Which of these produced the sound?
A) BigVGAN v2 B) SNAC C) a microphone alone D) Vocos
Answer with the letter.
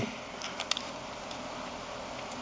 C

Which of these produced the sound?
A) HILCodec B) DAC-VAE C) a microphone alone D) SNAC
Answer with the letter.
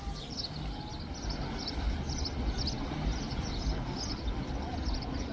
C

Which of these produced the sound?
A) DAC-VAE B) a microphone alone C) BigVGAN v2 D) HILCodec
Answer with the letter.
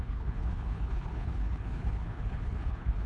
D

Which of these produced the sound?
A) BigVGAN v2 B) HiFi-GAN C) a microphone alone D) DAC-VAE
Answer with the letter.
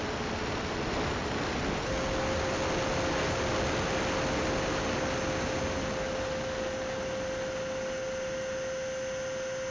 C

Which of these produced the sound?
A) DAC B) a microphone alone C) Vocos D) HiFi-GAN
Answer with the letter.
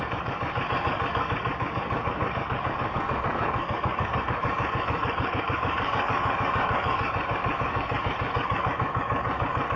A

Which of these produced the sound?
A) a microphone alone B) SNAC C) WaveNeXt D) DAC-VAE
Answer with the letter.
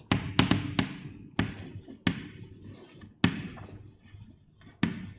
A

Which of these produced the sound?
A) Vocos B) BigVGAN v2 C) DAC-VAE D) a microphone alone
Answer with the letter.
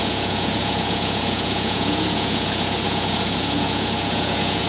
A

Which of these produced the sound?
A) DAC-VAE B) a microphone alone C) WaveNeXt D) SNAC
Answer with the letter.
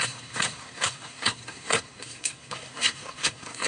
D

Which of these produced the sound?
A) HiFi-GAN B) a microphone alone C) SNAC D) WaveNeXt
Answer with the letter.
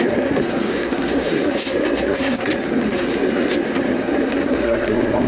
C